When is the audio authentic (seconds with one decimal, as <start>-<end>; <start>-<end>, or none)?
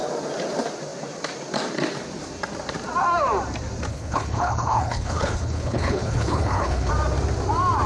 0.0-3.9; 6.9-7.9